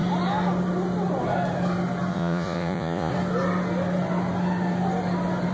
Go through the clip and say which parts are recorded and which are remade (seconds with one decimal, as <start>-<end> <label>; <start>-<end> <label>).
0.0-2.1 recorded; 2.1-3.1 remade; 3.1-5.5 recorded